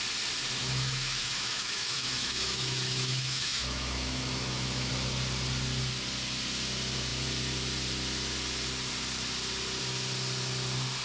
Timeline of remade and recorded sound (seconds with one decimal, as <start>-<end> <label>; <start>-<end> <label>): 0.0-0.6 recorded; 0.6-4.9 remade; 4.9-11.0 recorded